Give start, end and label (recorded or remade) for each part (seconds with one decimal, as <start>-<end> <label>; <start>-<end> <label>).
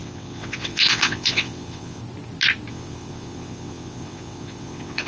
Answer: 0.0-2.0 remade; 2.0-2.7 recorded; 2.7-5.1 remade